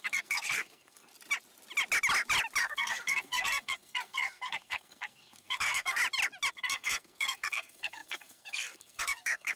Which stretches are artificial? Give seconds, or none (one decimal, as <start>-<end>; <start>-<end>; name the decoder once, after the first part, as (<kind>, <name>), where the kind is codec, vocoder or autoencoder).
0.0-1.1 (codec, SNAC); 2.6-6.0; 6.5-9.6